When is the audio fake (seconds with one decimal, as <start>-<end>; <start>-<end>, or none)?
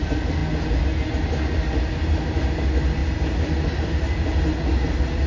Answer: none